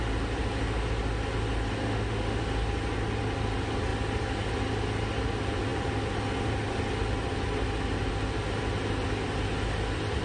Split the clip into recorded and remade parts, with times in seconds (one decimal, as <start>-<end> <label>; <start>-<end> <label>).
0.0-1.8 recorded; 1.8-2.4 remade; 2.4-10.2 recorded